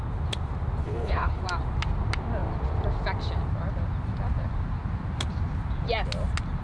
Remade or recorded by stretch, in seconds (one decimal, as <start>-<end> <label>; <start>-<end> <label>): 0.0-0.8 recorded; 0.8-1.4 remade; 1.4-6.6 recorded